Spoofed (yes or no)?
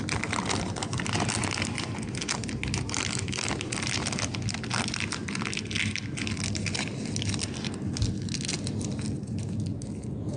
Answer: no